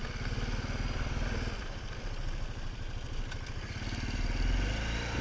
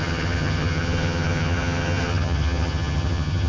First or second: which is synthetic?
second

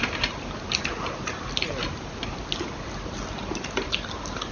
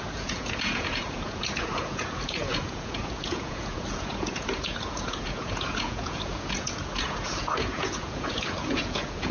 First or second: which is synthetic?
second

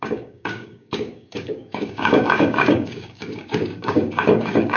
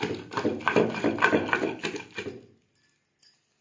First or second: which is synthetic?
first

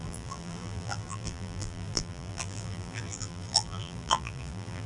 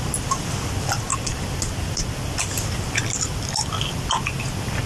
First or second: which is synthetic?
first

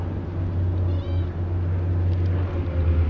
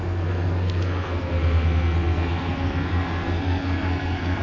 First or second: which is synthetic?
second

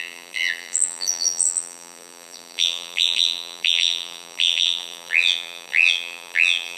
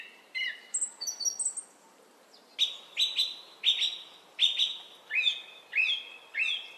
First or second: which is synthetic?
first